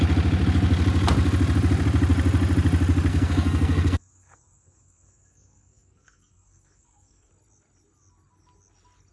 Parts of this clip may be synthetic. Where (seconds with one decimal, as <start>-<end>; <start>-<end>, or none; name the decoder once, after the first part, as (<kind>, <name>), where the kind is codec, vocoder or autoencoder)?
3.1-7.3 (codec, SNAC)